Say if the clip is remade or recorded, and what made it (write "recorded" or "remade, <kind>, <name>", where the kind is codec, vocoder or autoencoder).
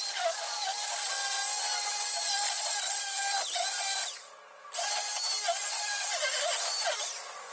recorded